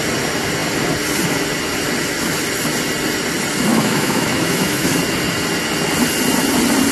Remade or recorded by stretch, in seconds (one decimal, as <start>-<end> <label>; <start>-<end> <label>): 0.0-3.7 recorded; 3.7-4.9 remade; 4.9-6.9 recorded